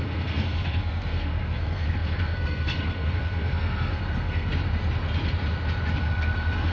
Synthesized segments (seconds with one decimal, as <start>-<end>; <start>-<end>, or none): 0.0-4.5; 6.0-6.7